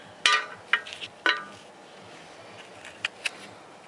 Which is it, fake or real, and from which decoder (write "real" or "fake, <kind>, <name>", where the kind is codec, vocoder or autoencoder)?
real